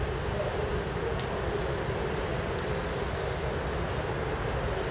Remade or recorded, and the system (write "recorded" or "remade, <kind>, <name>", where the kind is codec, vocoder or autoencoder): recorded